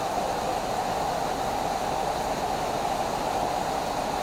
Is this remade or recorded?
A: recorded